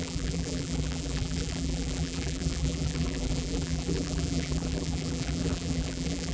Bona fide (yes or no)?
no